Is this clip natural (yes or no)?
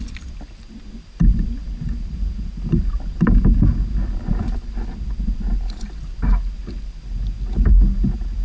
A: yes